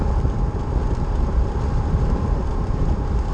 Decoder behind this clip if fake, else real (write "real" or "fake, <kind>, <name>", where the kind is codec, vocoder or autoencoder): real